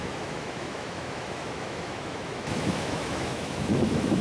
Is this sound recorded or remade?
remade